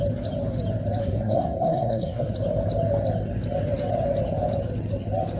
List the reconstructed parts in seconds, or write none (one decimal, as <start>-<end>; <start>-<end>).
1.0-2.3